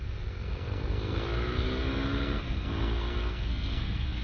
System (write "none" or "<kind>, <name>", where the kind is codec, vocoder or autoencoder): codec, SNAC